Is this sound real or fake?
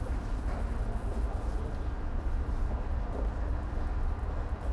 real